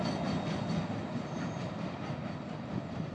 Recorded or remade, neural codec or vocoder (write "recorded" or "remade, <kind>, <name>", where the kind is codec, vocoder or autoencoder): recorded